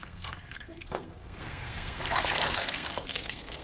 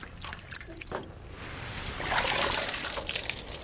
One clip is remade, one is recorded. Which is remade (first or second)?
first